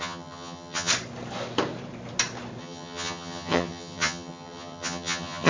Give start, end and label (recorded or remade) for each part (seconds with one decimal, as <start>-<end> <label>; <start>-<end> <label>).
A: 0.0-0.9 remade; 0.9-2.6 recorded; 2.6-5.5 remade